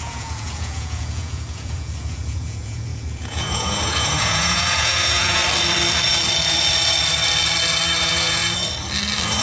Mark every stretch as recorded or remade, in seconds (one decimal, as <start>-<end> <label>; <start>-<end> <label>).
0.0-5.4 remade; 5.4-8.0 recorded; 8.0-8.4 remade; 8.4-9.4 recorded